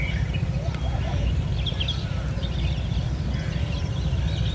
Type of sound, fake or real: real